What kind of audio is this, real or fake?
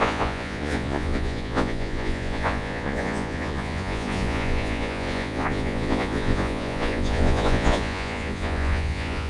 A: fake